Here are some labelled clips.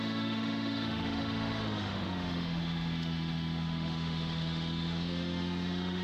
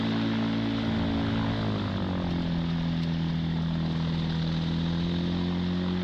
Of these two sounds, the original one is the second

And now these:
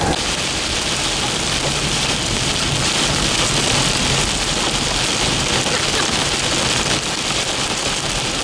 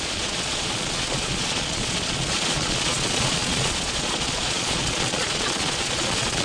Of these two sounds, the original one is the first